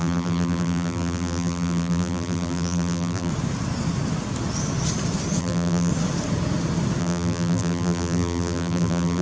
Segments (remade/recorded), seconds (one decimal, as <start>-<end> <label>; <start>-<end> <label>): 0.0-3.3 remade; 3.3-5.4 recorded; 5.4-5.9 remade; 5.9-7.0 recorded; 7.0-9.2 remade